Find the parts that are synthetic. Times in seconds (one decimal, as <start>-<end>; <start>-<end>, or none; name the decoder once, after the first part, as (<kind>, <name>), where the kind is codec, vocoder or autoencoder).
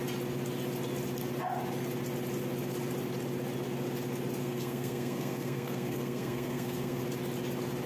4.4-7.0 (codec, SNAC)